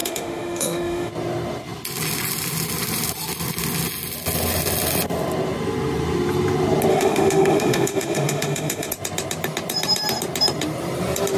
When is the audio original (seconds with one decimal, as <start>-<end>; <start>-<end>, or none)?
1.1-6.9; 8.9-11.4